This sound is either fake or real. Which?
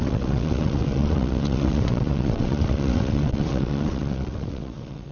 fake